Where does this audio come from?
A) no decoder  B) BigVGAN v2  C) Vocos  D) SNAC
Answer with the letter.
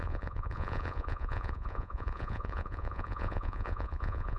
C